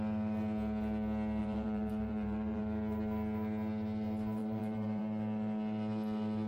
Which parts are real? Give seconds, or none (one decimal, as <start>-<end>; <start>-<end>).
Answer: 0.0-1.4; 2.6-4.4; 5.0-6.5